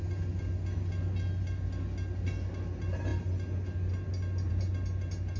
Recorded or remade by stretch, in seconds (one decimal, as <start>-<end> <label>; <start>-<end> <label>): 0.0-5.4 recorded